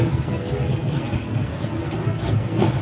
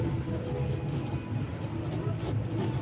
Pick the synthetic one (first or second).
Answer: first